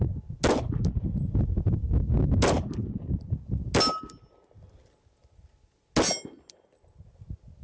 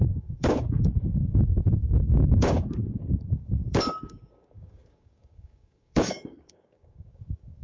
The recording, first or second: first